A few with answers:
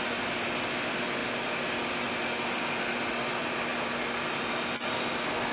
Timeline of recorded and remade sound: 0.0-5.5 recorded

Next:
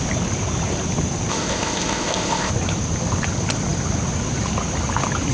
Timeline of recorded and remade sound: 0.0-1.3 recorded; 1.3-2.5 remade; 2.5-5.3 recorded

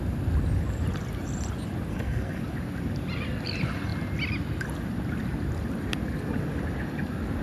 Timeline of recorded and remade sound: 0.0-1.9 recorded; 1.9-2.4 remade; 2.4-7.4 recorded

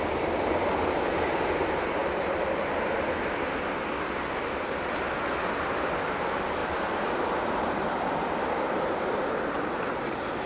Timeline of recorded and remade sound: 0.0-10.5 recorded

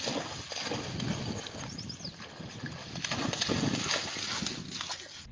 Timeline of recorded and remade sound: 0.0-2.8 recorded; 2.8-3.6 remade; 3.6-5.3 recorded

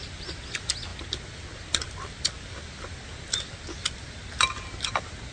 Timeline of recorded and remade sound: 0.0-5.3 recorded

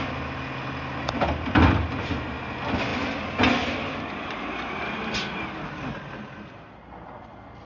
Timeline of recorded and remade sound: 0.0-7.7 recorded